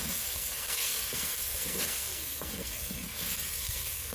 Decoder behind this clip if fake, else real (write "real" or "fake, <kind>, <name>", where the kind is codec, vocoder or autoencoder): fake, codec, SNAC